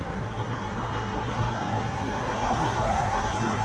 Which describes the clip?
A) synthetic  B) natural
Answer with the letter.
A